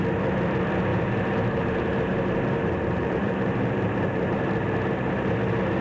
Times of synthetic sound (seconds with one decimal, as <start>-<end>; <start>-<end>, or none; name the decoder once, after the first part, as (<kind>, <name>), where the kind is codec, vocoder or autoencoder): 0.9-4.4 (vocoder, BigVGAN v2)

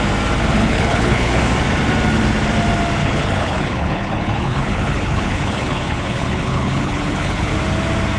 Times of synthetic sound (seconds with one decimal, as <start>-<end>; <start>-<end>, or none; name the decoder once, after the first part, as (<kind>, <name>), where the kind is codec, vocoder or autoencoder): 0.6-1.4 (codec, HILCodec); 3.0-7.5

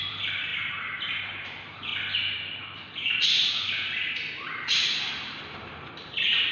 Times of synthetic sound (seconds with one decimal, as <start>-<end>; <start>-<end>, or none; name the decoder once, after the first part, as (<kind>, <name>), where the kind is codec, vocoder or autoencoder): 0.0-0.5 (vocoder, BigVGAN v2); 1.2-1.9; 4.3-6.5